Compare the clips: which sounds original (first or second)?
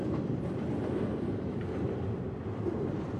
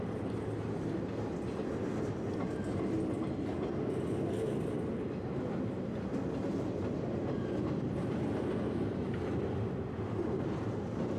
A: second